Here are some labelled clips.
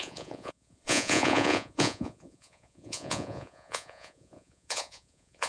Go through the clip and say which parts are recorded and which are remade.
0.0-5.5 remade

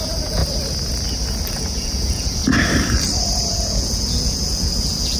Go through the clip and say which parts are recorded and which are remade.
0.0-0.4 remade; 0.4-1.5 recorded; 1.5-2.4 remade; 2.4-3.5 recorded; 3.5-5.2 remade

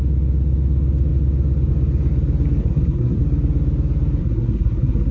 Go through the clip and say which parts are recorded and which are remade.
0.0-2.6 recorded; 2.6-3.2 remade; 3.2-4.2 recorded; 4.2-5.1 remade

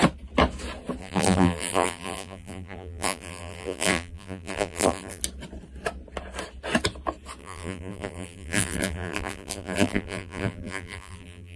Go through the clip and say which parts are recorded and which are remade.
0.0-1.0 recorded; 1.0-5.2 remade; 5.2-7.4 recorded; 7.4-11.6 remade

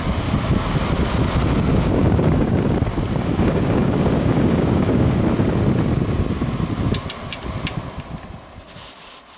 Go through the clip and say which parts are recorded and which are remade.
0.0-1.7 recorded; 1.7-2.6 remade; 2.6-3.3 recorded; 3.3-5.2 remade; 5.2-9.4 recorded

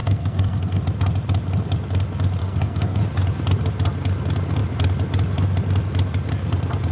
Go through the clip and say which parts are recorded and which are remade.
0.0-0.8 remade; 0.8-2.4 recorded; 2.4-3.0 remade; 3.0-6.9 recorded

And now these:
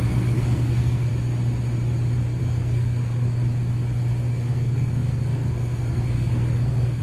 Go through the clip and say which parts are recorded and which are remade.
0.0-1.1 remade; 1.1-2.4 recorded; 2.4-3.4 remade; 3.4-4.3 recorded; 4.3-7.0 remade